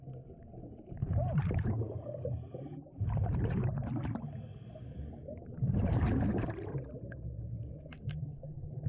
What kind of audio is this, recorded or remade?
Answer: remade